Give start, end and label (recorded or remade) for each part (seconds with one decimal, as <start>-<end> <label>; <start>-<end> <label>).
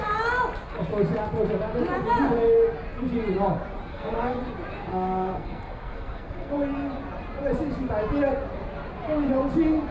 0.0-3.9 recorded; 3.9-4.4 remade; 4.4-4.9 recorded; 4.9-6.5 remade; 6.5-9.9 recorded